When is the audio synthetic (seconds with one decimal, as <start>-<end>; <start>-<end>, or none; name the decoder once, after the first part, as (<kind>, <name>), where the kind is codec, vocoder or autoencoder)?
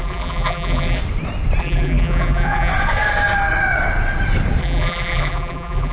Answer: 0.0-1.0 (vocoder, BigVGAN v2); 1.6-2.7; 4.6-5.9